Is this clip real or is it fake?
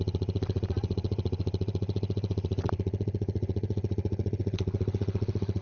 fake